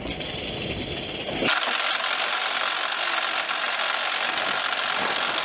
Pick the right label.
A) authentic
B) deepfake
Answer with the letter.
A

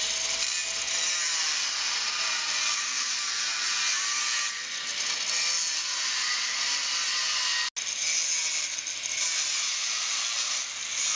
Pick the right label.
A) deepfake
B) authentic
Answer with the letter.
B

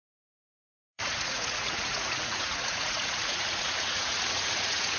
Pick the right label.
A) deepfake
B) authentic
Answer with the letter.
A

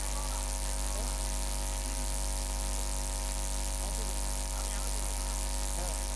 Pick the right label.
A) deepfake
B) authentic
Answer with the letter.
B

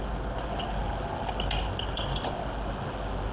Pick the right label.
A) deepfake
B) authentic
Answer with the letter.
B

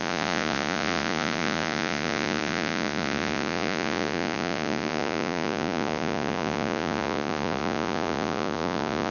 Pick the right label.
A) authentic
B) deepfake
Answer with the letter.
B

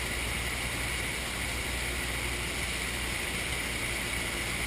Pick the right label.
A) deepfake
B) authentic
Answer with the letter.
B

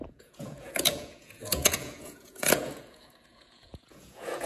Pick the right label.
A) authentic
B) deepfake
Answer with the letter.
B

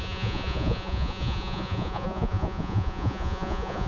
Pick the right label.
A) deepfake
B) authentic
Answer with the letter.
A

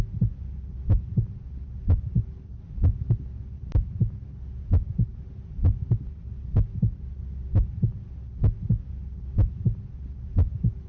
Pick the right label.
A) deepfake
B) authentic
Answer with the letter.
B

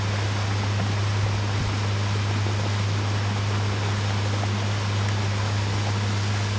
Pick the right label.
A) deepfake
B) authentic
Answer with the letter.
B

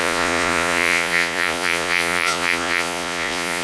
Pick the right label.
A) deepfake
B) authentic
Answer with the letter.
A